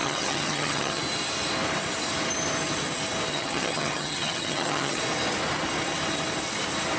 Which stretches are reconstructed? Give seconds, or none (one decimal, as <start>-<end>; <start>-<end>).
0.0-1.0; 3.3-5.0